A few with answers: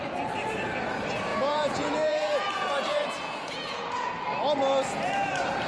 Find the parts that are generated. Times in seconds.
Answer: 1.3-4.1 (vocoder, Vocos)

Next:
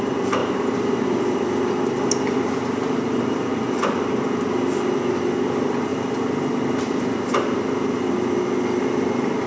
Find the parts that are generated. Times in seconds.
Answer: none